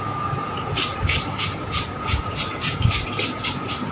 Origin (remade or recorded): remade